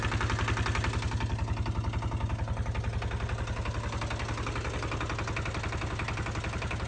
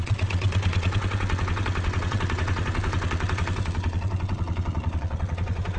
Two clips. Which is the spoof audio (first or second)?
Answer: second